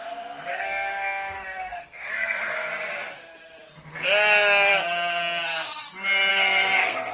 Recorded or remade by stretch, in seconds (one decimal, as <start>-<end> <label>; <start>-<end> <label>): 0.0-0.5 recorded; 0.5-2.7 remade; 2.7-6.3 recorded; 6.3-7.1 remade